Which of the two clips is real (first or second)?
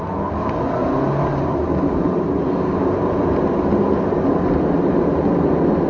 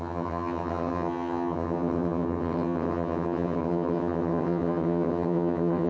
first